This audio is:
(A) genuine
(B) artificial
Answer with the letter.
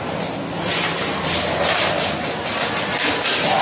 A